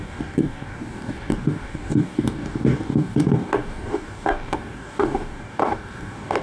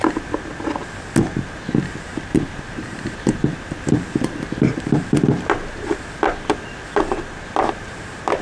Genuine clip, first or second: second